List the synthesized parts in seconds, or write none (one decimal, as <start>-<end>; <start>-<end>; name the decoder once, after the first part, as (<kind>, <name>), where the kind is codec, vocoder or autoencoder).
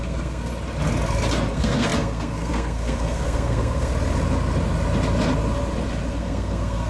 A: 0.0-0.5 (codec, SNAC); 1.5-3.9; 6.1-6.9